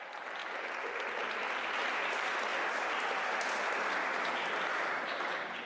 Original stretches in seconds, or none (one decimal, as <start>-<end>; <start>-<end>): 0.0-5.7